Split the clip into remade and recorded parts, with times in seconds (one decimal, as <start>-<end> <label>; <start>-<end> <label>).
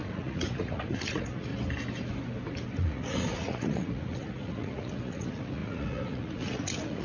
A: 0.0-1.5 remade; 1.5-2.7 recorded; 2.7-7.0 remade